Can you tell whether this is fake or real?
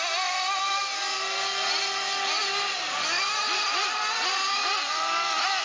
real